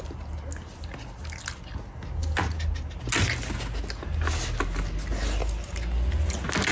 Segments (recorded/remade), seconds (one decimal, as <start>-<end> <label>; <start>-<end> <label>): 0.0-6.7 recorded